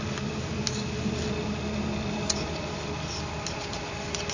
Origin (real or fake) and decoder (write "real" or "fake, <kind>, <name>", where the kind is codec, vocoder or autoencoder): real